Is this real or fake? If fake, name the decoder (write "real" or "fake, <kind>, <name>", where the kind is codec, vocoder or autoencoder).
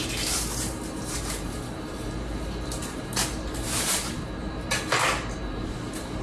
fake, vocoder, BigVGAN v2